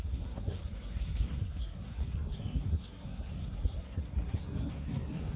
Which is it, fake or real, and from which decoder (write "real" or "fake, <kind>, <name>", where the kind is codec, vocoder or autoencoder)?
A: fake, codec, SNAC